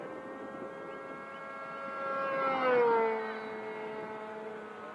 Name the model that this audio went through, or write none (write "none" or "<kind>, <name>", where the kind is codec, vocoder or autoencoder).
none